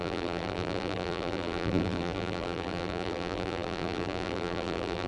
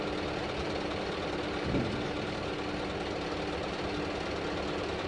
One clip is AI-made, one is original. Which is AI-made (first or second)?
first